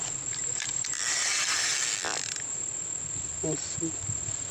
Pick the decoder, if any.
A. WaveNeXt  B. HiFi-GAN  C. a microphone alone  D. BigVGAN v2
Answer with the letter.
D